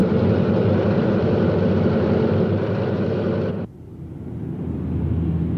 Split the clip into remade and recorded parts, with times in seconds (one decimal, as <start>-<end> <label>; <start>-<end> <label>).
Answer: 0.0-5.6 recorded

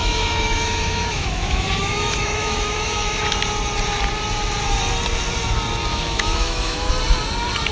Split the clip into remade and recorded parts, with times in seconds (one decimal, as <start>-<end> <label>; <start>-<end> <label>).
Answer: 0.0-3.2 remade; 3.2-5.9 recorded; 5.9-6.9 remade; 6.9-7.7 recorded

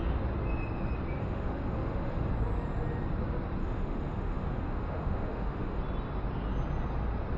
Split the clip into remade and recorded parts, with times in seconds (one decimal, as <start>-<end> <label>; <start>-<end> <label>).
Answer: 0.0-1.2 recorded; 1.2-2.3 remade; 2.3-3.6 recorded; 3.6-5.8 remade; 5.8-7.4 recorded

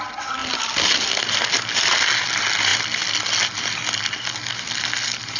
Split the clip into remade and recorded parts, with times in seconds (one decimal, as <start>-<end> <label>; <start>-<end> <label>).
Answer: 0.0-5.4 recorded

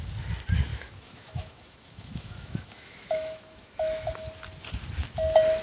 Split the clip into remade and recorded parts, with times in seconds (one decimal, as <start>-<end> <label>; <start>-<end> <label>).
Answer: 0.0-0.7 recorded; 0.7-4.1 remade; 4.1-5.6 recorded